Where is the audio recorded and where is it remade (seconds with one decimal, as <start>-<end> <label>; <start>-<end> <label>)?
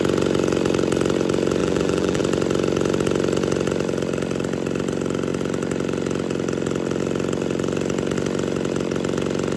0.0-1.6 recorded; 1.6-2.2 remade; 2.2-9.6 recorded